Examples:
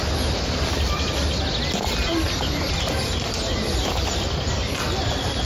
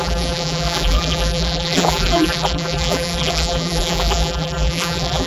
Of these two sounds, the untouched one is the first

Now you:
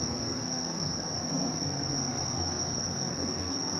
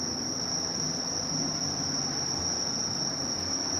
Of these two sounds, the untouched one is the second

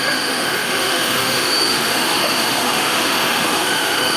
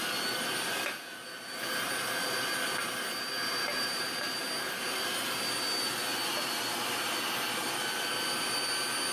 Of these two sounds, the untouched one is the second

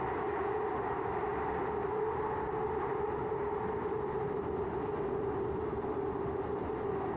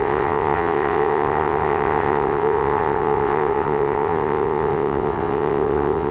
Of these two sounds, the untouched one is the first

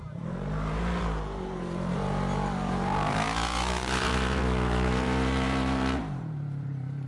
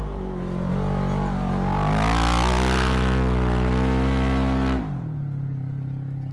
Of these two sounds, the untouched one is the second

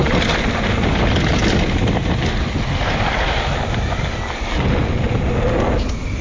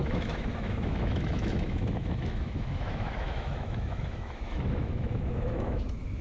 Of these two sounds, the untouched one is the first